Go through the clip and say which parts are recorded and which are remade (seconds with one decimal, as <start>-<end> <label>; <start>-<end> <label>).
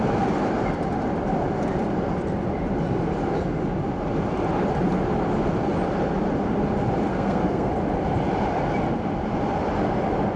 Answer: 0.0-7.1 recorded; 7.1-7.7 remade; 7.7-10.4 recorded